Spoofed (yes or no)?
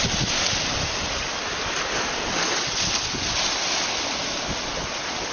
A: no